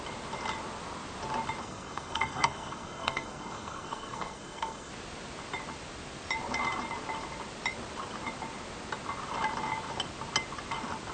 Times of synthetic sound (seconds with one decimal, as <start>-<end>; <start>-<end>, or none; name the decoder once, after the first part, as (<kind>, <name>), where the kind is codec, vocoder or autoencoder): 1.6-4.9 (codec, SNAC)